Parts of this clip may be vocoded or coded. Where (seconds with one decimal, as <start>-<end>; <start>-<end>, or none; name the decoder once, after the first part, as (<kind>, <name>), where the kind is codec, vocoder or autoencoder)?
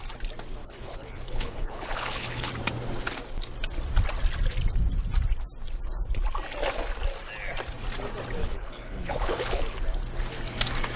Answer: 0.6-2.5 (codec, HILCodec); 8.4-9.8